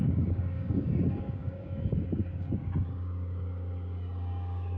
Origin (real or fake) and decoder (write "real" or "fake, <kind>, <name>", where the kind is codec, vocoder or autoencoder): fake, codec, DAC